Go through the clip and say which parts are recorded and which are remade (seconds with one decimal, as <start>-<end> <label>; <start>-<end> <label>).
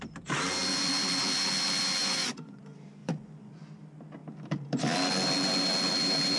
0.0-2.0 recorded; 2.0-2.6 remade; 2.6-3.0 recorded; 3.0-3.5 remade; 3.5-6.4 recorded